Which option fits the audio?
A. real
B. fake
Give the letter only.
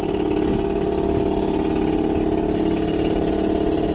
A